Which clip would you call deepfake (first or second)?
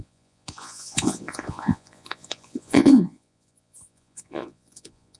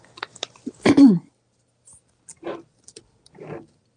first